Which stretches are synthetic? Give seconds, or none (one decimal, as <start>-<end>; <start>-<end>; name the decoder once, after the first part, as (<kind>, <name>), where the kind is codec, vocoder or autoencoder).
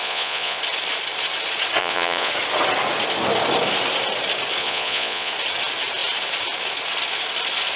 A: 0.0-0.6 (vocoder, Vocos); 1.8-2.3; 4.6-5.3